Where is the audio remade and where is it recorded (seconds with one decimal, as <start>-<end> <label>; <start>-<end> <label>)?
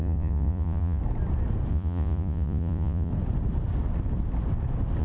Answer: 0.0-1.0 remade; 1.0-1.7 recorded; 1.7-3.1 remade; 3.1-5.0 recorded